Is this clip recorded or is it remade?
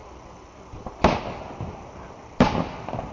recorded